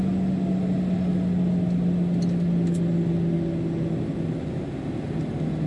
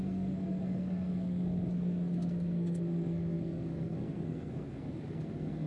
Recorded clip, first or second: first